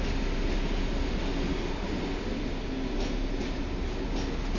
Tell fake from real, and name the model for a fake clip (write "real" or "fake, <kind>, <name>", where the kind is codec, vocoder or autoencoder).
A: real